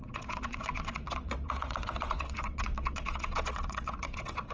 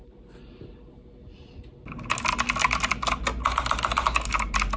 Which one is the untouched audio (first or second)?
second